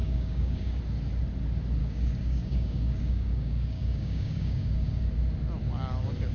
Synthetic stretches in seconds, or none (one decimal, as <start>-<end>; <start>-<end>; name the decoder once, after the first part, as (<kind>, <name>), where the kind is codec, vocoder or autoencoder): 0.0-0.8 (codec, DAC); 1.8-5.0